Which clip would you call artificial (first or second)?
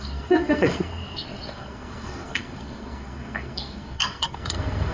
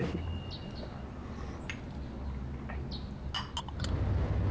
first